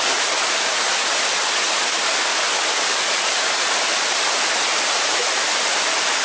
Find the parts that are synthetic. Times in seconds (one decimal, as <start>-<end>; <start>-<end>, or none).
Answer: 2.3-5.8